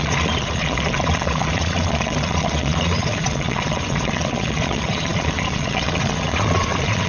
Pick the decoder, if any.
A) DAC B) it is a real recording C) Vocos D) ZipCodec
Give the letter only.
C